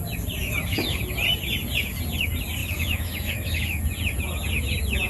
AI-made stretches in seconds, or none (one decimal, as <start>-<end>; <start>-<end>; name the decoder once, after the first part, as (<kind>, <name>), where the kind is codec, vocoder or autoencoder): 0.4-1.0 (autoencoder, DAC-VAE); 2.6-3.8